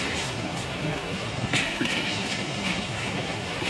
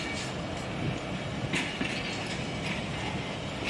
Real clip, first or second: second